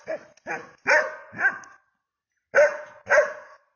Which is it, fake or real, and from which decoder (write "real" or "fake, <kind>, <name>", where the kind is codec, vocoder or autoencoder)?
real